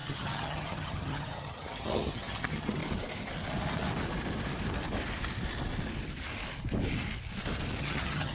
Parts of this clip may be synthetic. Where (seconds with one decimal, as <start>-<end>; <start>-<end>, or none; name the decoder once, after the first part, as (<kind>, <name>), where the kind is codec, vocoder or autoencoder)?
0.0-2.8 (vocoder, HiFi-GAN); 7.8-8.3